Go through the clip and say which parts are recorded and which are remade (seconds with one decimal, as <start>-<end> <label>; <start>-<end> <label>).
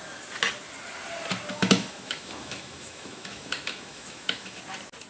0.0-1.5 recorded; 1.5-4.6 remade; 4.6-5.1 recorded